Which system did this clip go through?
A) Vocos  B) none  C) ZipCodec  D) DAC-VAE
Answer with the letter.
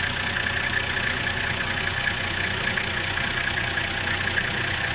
A